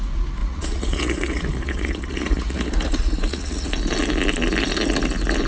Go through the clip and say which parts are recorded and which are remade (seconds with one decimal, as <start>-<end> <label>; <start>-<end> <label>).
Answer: 0.0-0.4 recorded; 0.4-3.7 remade; 3.7-5.5 recorded